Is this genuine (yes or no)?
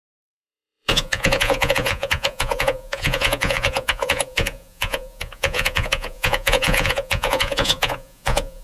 no